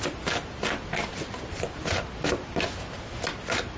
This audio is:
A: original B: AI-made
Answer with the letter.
A